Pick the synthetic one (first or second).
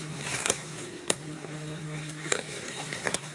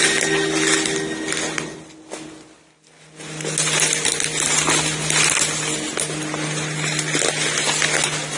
first